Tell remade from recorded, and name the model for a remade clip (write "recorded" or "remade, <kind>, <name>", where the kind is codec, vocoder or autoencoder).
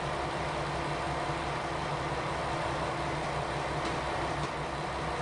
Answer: recorded